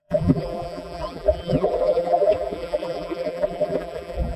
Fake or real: fake